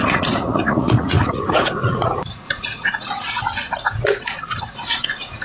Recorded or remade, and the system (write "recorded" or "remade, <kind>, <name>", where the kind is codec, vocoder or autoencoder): remade, vocoder, Vocos